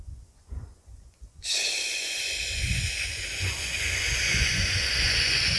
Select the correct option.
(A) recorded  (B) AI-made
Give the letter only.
B